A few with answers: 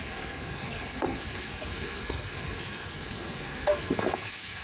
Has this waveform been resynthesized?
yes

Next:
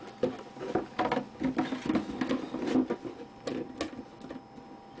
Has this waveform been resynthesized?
no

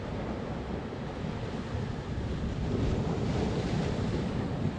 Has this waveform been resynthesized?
no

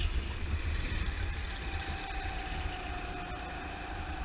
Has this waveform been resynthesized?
no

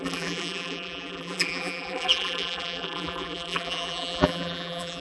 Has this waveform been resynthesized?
yes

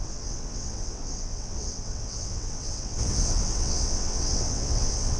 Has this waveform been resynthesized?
yes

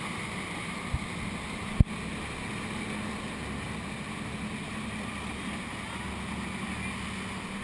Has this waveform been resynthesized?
no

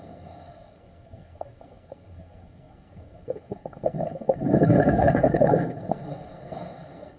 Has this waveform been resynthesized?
yes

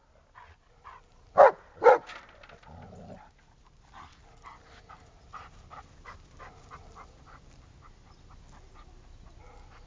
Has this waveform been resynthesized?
no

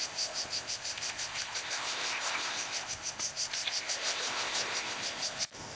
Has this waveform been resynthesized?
yes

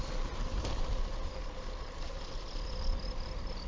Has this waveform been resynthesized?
yes